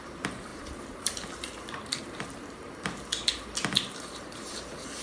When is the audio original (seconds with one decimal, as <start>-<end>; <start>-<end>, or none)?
3.1-3.9